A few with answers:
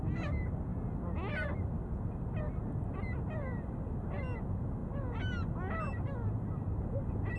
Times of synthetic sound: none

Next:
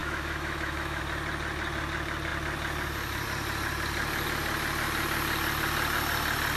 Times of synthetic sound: 0.0-1.0 (autoencoder, DAC-VAE)

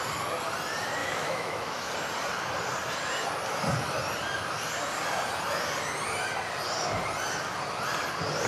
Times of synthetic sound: 1.0-1.9 (autoencoder, DAC-VAE)